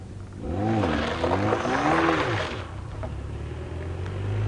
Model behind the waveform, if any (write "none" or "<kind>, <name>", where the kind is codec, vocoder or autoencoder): none